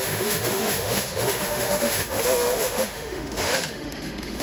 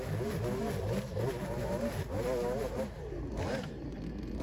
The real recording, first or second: second